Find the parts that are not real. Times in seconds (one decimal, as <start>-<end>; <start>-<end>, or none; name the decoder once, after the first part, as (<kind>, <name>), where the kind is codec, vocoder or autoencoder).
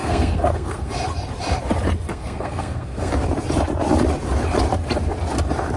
0.0-0.9 (codec, SNAC); 2.1-3.1